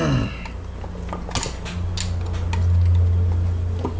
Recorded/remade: recorded